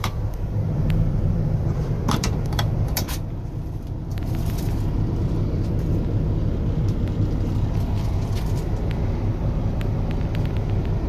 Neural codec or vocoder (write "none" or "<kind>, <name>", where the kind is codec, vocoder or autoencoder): vocoder, BigVGAN v2